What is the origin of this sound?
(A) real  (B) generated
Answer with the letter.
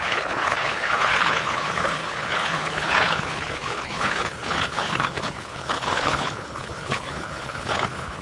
B